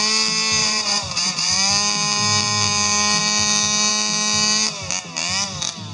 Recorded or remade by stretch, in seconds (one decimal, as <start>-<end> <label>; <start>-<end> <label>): 0.0-0.6 recorded; 0.6-1.7 remade; 1.7-5.9 recorded